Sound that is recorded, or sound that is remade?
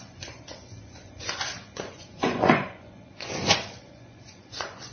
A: remade